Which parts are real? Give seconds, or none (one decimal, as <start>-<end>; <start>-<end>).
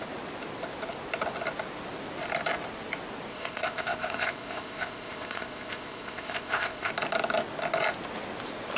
0.0-3.3; 6.9-8.8